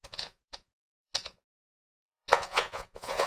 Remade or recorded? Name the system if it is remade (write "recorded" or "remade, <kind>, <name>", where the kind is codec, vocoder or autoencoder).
remade, vocoder, Vocos